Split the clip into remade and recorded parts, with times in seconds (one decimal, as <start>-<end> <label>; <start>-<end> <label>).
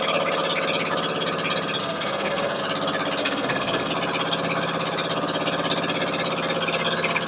0.0-1.8 recorded; 1.8-2.6 remade; 2.6-3.2 recorded; 3.2-3.9 remade; 3.9-7.3 recorded